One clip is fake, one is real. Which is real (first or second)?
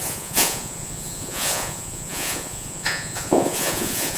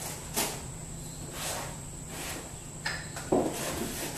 second